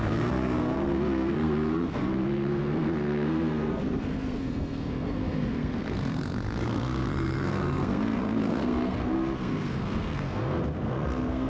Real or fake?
fake